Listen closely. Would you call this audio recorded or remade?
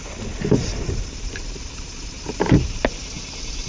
recorded